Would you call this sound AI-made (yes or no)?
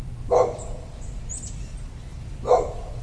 no